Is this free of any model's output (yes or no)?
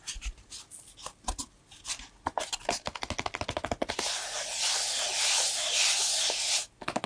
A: yes